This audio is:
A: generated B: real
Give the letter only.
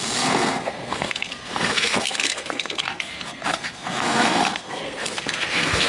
A